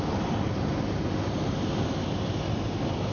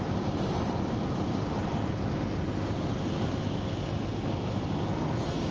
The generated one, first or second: first